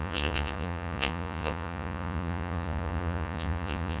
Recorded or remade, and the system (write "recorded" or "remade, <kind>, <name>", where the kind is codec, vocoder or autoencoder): remade, vocoder, Vocos